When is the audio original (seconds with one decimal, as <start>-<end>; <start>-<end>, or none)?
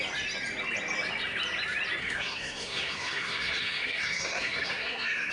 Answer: 0.0-2.0